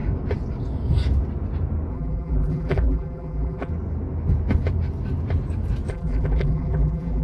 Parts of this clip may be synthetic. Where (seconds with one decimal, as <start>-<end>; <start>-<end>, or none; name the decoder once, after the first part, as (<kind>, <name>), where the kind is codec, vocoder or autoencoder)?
1.9-3.7 (vocoder, BigVGAN v2); 5.9-7.2